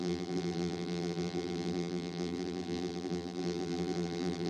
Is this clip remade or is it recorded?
remade